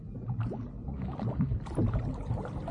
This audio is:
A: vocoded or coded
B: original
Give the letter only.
B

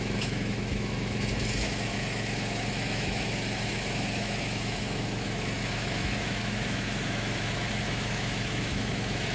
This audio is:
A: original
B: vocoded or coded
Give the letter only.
B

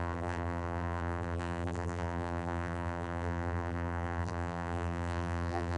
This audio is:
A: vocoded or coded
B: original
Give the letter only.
A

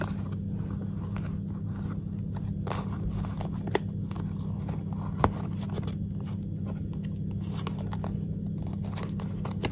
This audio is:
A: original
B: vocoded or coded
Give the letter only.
A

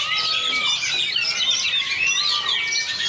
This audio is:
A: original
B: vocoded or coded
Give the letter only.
A